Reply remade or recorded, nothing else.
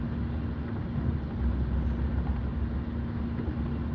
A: recorded